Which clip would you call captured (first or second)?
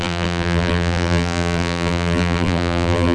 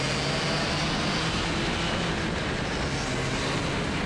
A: second